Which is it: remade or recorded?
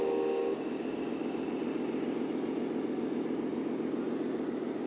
recorded